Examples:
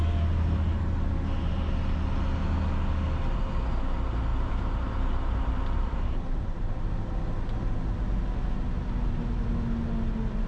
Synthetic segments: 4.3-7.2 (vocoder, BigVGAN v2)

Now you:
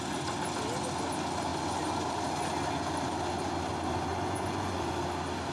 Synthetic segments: 4.1-4.9 (vocoder, Vocos)